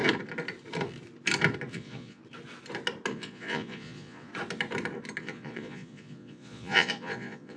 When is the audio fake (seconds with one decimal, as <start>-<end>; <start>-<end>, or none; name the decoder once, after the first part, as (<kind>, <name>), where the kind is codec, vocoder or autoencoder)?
1.7-2.2 (vocoder, Vocos); 3.1-4.3; 5.2-7.6